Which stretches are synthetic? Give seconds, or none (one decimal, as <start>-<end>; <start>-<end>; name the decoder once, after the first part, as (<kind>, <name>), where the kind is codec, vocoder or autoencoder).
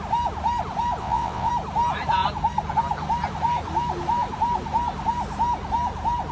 1.0-1.5 (vocoder, WaveNeXt)